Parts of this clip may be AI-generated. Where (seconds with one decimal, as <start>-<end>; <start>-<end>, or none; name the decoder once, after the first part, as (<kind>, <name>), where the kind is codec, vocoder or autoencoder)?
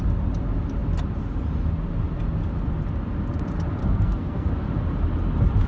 3.8-4.5 (codec, SNAC)